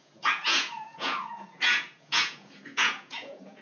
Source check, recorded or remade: remade